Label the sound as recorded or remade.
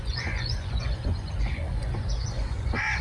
remade